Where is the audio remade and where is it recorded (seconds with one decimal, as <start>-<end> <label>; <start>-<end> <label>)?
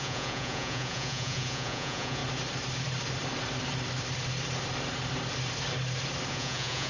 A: 0.0-2.2 remade; 2.2-6.3 recorded; 6.3-6.9 remade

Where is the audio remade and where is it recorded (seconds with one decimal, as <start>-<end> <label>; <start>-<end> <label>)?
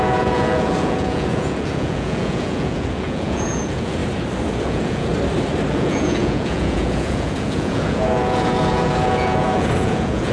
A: 0.0-4.0 remade; 4.0-4.5 recorded; 4.5-5.1 remade; 5.1-5.7 recorded; 5.7-10.3 remade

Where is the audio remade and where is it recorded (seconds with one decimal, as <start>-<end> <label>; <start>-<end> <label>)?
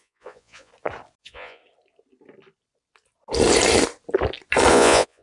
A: 0.0-0.7 remade; 0.7-1.2 recorded; 1.2-1.6 remade; 1.6-4.7 recorded; 4.7-5.2 remade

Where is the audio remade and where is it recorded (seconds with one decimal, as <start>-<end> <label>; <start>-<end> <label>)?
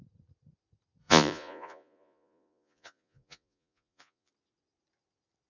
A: 0.0-1.0 recorded; 1.0-4.3 remade; 4.3-5.5 recorded